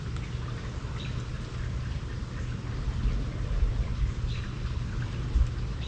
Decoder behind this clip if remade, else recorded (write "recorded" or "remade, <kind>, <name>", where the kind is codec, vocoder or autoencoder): recorded